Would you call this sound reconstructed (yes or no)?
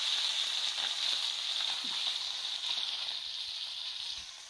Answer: no